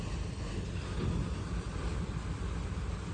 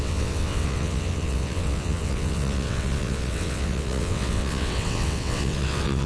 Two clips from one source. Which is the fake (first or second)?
second